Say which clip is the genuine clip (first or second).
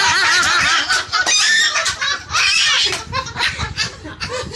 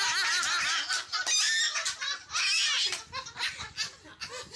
second